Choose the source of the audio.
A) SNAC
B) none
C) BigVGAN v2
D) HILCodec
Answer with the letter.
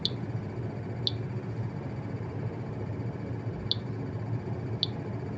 B